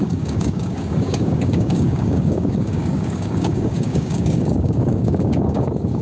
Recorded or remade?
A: remade